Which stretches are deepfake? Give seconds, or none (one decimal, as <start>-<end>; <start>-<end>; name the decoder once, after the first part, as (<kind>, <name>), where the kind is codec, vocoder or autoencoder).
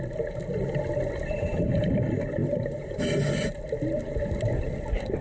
2.4-3.3 (vocoder, BigVGAN v2)